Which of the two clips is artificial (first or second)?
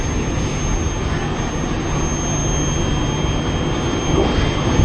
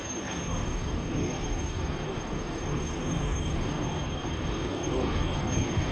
second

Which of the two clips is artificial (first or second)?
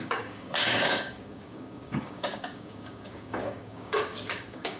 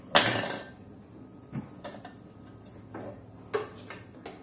first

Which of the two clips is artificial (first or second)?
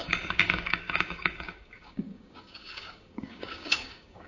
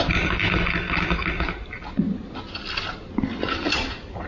first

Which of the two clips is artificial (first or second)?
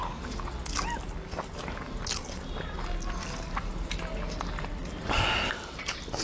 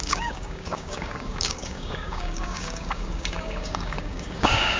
second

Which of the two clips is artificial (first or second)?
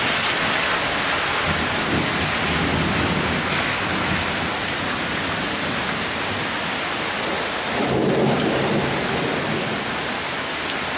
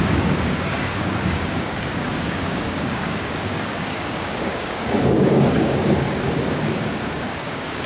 second